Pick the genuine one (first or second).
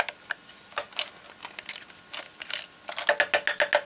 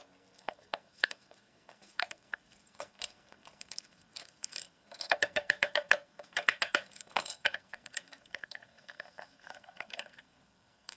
first